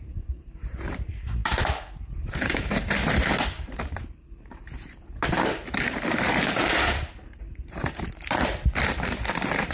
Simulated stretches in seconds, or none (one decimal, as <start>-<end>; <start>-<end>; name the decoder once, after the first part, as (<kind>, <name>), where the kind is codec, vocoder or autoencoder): 0.0-9.7 (vocoder, BigVGAN v2)